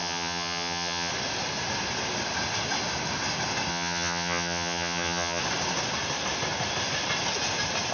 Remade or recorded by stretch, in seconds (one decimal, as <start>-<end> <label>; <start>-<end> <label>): 0.0-1.1 remade; 1.1-3.7 recorded; 3.7-5.4 remade; 5.4-7.9 recorded